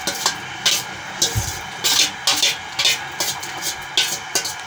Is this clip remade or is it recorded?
recorded